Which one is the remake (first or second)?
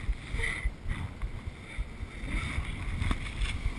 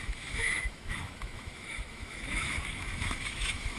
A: second